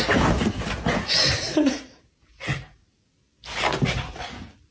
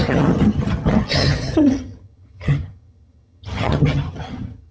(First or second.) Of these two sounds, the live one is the first